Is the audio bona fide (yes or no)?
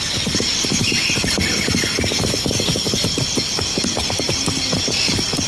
yes